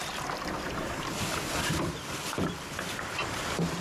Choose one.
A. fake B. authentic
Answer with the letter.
A